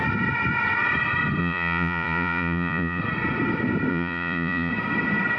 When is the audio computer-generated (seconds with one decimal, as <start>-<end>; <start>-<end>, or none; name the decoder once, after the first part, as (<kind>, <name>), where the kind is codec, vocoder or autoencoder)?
1.4-3.0 (vocoder, Vocos); 3.9-4.7